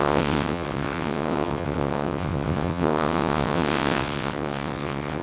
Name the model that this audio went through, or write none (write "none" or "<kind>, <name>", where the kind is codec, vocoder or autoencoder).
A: vocoder, WaveNeXt